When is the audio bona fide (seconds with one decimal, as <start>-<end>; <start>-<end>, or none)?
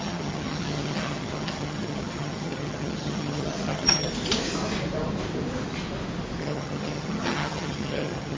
4.1-6.4